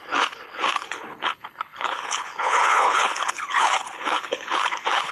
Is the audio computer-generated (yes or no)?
yes